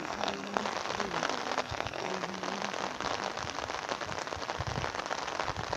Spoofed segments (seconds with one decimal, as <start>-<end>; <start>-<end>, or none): 0.0-0.6; 1.6-2.1